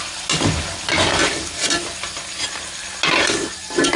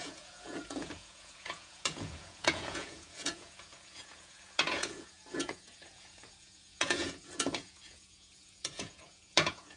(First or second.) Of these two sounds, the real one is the first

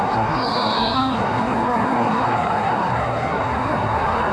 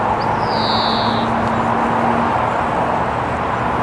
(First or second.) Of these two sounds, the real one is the second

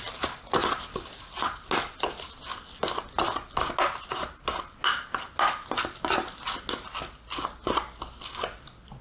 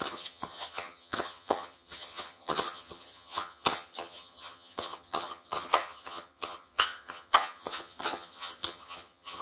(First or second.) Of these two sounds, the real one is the first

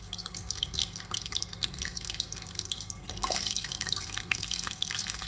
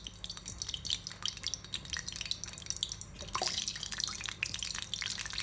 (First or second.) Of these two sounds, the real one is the second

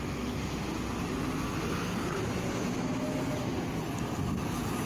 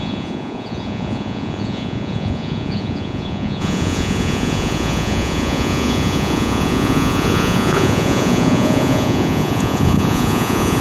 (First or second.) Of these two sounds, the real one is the first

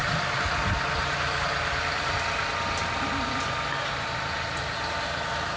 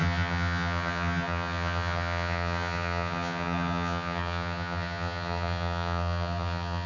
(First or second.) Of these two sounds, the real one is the first